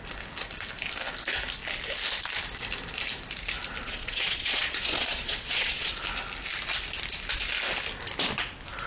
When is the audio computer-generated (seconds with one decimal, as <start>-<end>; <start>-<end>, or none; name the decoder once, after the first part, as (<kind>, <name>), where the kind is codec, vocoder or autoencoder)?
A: 3.8-6.0 (vocoder, Vocos)